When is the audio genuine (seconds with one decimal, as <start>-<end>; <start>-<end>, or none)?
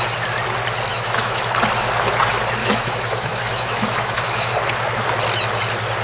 0.0-0.9; 1.4-2.6; 4.5-6.0